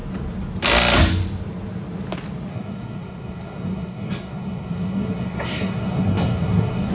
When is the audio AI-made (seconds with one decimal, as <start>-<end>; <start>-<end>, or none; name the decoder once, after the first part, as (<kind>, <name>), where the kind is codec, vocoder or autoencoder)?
2.5-6.9 (codec, SNAC)